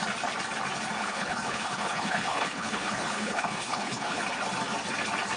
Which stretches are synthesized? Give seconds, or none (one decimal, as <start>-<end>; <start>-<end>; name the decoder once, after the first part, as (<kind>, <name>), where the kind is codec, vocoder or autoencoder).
1.0-4.2 (codec, HILCodec)